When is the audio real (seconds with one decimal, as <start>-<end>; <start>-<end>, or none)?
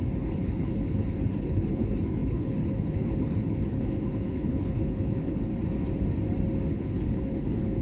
5.5-6.7